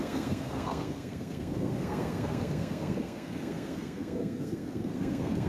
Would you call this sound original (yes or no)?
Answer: no